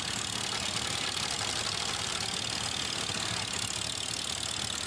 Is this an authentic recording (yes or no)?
yes